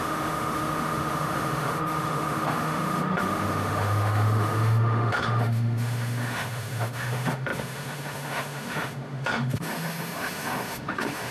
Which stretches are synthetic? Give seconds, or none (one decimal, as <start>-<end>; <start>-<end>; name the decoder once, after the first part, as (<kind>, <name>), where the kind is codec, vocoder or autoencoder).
0.0-11.3 (autoencoder, DAC-VAE)

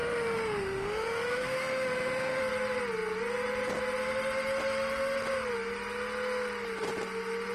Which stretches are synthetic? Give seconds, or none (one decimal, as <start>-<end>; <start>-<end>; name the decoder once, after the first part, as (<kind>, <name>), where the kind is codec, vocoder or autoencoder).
0.0-2.4 (autoencoder, DAC-VAE)

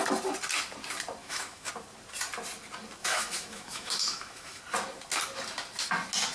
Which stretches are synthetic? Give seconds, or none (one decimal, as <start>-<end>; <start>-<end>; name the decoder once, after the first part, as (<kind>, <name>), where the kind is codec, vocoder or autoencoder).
1.2-1.7 (autoencoder, DAC-VAE); 3.0-4.6

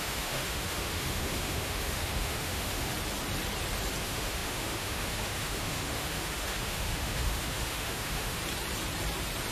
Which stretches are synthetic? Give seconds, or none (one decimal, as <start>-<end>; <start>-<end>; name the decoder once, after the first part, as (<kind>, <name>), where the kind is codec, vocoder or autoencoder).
0.0-2.9 (autoencoder, DAC-VAE); 4.0-8.4

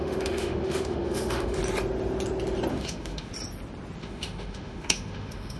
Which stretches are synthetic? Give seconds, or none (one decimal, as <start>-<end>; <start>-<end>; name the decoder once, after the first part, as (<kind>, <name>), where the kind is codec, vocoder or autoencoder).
0.0-1.6 (autoencoder, DAC-VAE); 2.7-3.3; 4.0-5.6

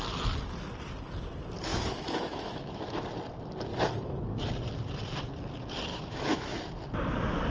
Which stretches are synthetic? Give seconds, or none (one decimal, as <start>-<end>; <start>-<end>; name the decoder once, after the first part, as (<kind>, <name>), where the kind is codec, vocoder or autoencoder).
1.7-3.0 (autoencoder, DAC-VAE); 5.9-6.7